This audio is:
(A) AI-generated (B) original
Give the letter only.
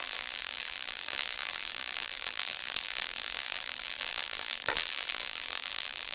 A